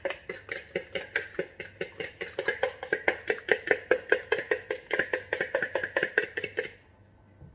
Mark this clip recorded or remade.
recorded